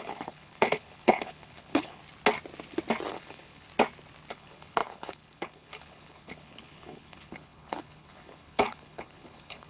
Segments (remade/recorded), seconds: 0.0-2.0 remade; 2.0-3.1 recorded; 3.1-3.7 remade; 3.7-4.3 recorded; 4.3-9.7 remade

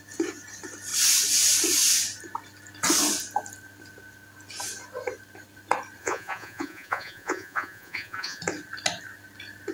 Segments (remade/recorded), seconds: 0.0-6.0 recorded; 6.0-8.4 remade; 8.4-9.7 recorded